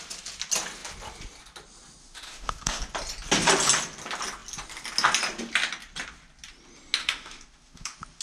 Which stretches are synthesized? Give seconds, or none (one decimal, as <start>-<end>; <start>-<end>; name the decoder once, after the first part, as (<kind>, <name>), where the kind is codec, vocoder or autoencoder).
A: 2.0-2.8 (autoencoder, DAC-VAE); 7.0-8.2